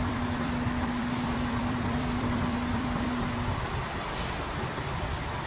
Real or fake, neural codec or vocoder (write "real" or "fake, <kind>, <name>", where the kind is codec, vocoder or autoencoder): fake, vocoder, BigVGAN v2